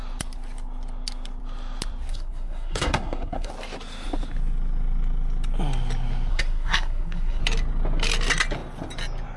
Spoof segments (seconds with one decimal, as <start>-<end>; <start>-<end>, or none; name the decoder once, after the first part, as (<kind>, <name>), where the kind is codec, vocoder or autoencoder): 2.1-3.5 (codec, SNAC); 6.3-7.4

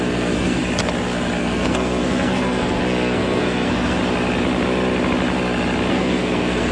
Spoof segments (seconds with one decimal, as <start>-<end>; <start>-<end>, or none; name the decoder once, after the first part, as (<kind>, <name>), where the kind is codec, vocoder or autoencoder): 0.0-0.6 (codec, SNAC); 1.4-4.0; 5.9-6.7

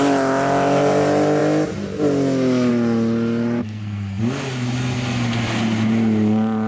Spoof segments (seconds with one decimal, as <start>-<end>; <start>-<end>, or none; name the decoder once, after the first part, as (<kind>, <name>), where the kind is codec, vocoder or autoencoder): 3.6-4.2 (codec, SNAC)